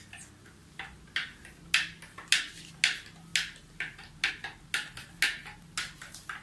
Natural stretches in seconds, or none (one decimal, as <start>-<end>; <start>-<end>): 0.0-6.4